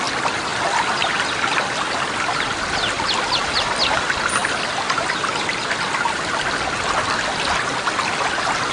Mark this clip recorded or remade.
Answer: recorded